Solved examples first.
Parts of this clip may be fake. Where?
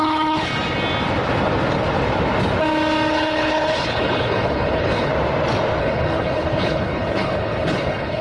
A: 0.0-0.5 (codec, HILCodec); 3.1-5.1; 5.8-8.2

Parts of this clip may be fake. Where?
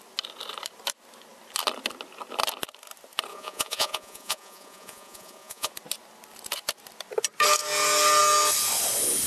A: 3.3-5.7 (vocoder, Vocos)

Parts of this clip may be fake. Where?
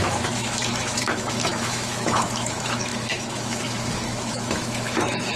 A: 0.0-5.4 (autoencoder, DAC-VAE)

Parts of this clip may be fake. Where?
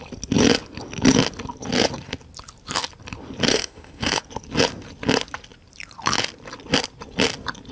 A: 3.5-4.2 (autoencoder, DAC-VAE)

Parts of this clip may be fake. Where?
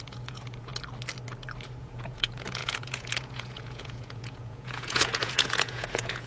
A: 0.0-0.7 (vocoder, Vocos); 1.8-6.3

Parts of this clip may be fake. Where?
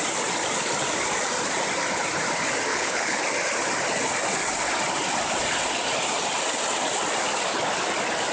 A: 2.7-3.2 (codec, HILCodec)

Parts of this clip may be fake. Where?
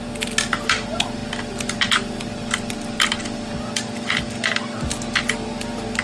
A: none